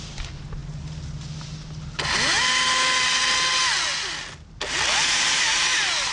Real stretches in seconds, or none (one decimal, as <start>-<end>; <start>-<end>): 0.0-6.1